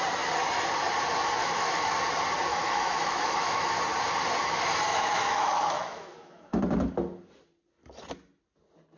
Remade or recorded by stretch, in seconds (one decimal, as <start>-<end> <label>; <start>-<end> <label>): 0.0-1.4 recorded; 1.4-1.9 remade; 1.9-2.5 recorded; 2.5-3.8 remade; 3.8-4.9 recorded; 4.9-6.6 remade; 6.6-9.0 recorded